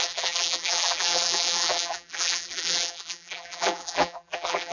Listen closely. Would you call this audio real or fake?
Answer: fake